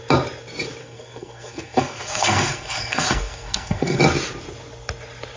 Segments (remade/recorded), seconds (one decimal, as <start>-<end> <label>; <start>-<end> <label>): 0.0-0.8 recorded; 0.8-4.0 remade; 4.0-5.4 recorded